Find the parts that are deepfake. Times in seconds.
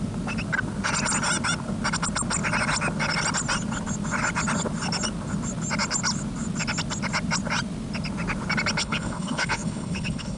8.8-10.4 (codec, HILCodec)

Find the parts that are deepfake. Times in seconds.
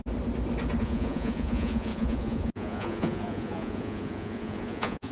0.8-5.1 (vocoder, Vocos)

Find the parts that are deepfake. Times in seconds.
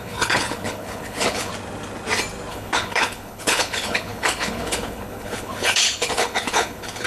0.0-1.5 (codec, HILCodec); 2.5-7.1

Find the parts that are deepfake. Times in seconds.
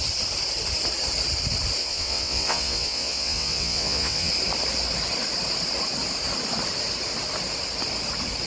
1.8-4.3 (vocoder, WaveNeXt)